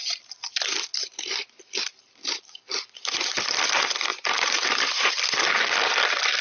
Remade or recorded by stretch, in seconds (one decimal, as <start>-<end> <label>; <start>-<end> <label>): 0.0-4.1 recorded; 4.1-5.1 remade; 5.1-6.4 recorded